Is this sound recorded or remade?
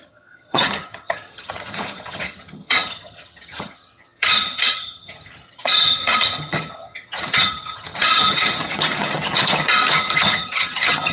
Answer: remade